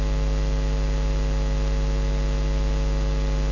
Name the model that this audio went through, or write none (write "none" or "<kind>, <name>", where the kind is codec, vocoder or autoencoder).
none